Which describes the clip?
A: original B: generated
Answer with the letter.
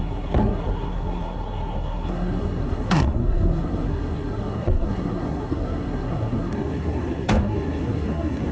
B